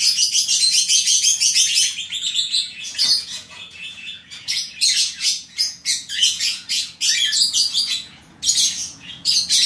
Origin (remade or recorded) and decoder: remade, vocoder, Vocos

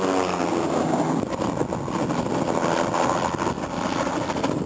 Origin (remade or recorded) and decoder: recorded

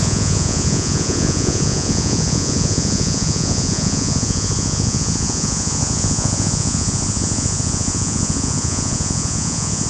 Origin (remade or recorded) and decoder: remade, vocoder, Vocos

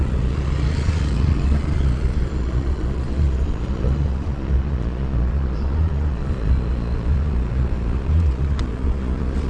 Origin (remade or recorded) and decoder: remade, vocoder, Vocos